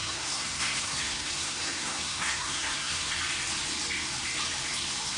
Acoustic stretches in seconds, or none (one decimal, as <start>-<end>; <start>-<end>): 3.1-5.2